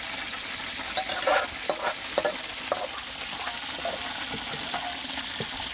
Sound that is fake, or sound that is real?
real